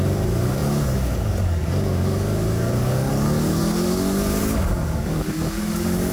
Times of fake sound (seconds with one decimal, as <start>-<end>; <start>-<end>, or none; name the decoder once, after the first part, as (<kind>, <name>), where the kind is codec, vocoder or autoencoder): 0.0-6.1 (codec, DAC)